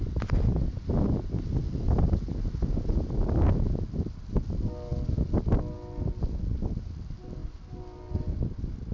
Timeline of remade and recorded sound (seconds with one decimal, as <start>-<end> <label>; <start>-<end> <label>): 0.0-8.9 recorded